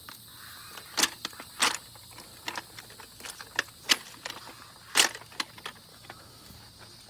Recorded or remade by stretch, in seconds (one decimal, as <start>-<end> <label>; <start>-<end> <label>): 0.0-5.9 recorded; 5.9-6.5 remade; 6.5-7.1 recorded